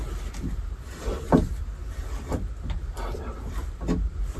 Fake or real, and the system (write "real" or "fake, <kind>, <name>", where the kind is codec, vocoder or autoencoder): real